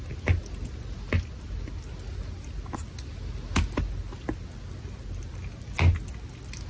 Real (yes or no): yes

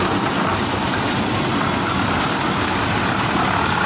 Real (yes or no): yes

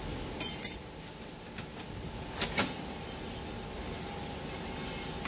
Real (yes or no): yes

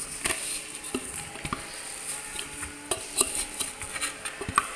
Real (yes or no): yes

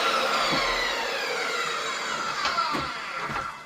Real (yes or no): yes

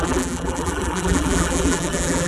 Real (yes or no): no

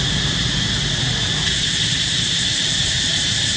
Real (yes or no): no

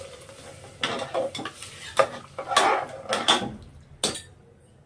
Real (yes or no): yes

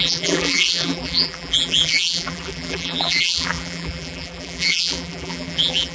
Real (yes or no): no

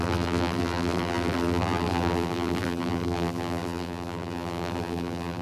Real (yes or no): no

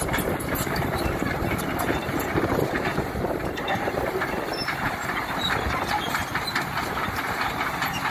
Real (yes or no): no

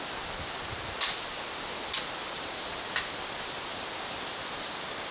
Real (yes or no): yes